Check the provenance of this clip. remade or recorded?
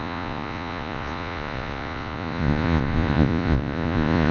remade